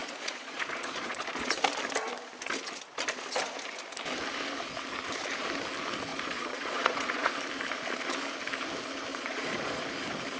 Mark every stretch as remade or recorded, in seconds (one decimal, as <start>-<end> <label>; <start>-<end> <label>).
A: 0.0-1.6 remade; 1.6-6.1 recorded; 6.1-7.4 remade; 7.4-9.1 recorded; 9.1-9.8 remade; 9.8-10.4 recorded